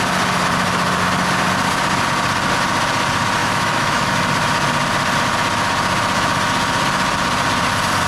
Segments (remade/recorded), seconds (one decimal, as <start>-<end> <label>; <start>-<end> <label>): 0.0-3.4 recorded; 3.4-4.1 remade; 4.1-8.1 recorded